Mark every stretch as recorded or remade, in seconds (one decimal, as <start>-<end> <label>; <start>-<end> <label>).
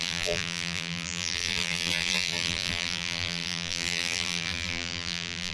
0.0-5.5 remade